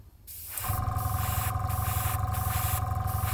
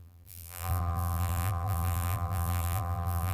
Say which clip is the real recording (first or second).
first